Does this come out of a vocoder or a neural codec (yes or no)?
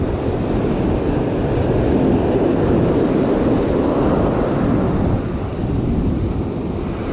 no